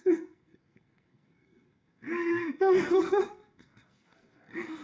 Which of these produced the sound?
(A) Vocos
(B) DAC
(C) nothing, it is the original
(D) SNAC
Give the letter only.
D